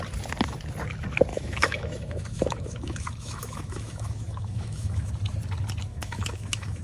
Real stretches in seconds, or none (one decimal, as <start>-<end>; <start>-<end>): 0.0-1.3; 5.1-5.9